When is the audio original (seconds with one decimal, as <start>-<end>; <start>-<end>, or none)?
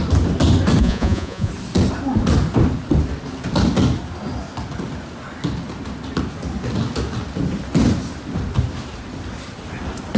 0.0-0.8; 1.5-10.2